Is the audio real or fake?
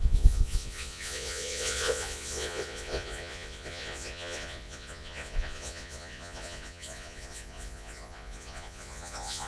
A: fake